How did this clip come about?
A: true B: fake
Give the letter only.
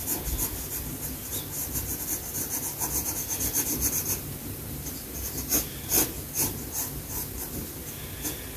A